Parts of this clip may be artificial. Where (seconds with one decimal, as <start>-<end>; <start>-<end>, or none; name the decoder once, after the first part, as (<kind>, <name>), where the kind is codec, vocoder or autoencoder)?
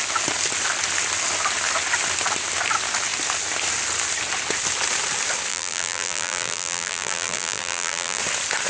5.5-8.2 (vocoder, BigVGAN v2)